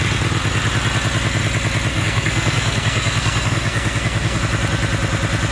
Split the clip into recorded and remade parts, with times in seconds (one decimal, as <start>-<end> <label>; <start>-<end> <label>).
0.0-1.9 recorded; 1.9-4.4 remade; 4.4-5.5 recorded